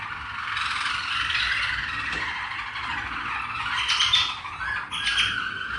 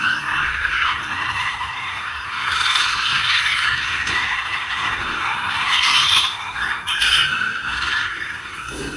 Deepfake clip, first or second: second